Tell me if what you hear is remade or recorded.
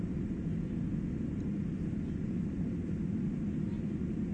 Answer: recorded